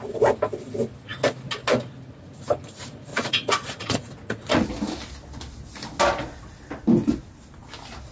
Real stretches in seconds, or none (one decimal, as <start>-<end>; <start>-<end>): 0.0-3.1; 4.7-8.1